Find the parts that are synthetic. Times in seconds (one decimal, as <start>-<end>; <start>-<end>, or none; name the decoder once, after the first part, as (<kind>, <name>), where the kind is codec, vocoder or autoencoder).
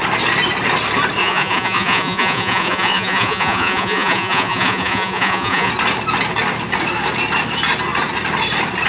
1.2-5.7 (vocoder, Vocos)